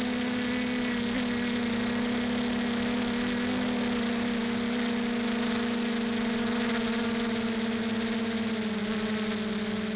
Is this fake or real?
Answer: real